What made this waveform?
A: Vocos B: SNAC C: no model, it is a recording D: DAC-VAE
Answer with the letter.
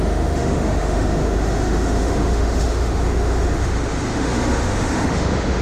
D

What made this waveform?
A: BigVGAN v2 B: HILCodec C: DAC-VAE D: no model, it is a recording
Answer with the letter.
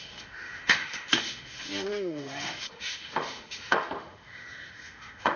C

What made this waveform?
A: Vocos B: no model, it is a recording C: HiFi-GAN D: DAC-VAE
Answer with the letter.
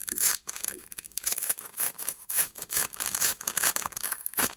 D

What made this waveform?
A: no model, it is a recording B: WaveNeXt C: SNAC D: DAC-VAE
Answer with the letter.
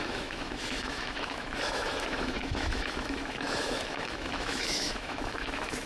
D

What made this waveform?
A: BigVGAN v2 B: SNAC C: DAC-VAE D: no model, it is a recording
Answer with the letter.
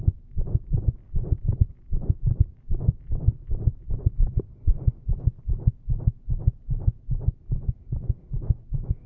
D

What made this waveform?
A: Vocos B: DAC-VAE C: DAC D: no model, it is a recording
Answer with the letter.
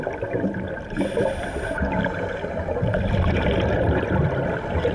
D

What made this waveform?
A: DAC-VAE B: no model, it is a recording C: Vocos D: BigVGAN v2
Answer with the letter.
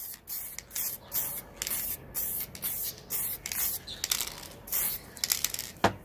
B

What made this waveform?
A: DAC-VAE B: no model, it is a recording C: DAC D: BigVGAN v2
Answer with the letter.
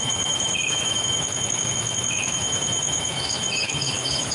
A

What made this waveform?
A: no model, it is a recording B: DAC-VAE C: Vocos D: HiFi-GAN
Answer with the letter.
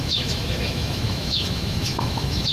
B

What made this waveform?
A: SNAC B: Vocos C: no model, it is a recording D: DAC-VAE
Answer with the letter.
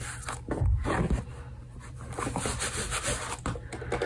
C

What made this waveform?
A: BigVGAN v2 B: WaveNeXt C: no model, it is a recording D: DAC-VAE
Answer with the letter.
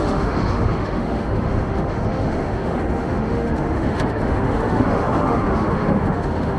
D